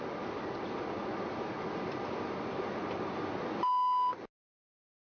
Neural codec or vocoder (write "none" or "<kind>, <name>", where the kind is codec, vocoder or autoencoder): none